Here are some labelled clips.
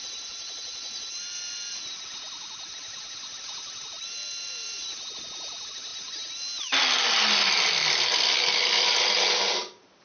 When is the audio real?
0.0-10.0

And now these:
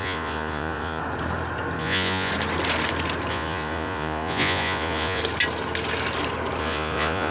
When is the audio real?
1.0-1.8; 2.3-3.3; 5.2-6.6

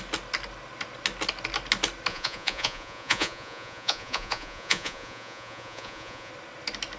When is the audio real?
0.0-2.1; 6.3-7.0

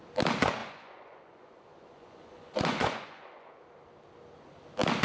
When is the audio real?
0.0-0.6; 3.6-5.0